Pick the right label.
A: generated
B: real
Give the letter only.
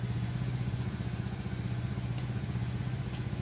A